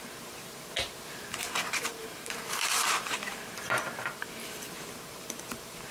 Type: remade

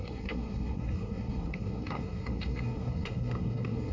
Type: remade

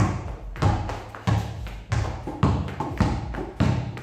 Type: recorded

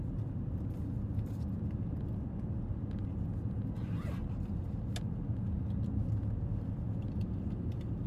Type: recorded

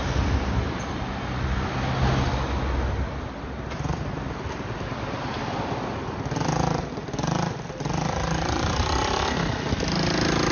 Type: recorded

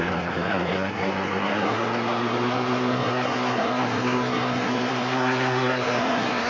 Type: remade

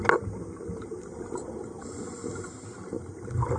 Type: recorded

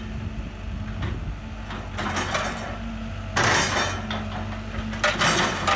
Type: recorded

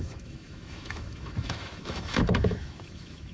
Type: remade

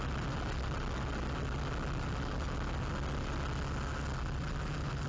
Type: recorded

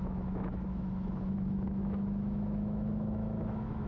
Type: remade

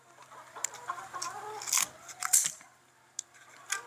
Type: recorded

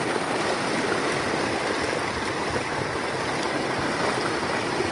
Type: recorded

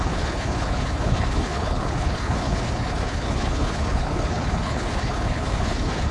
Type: remade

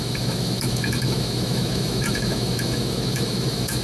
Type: remade